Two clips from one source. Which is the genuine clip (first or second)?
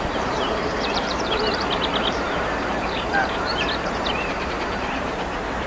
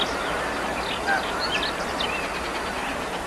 second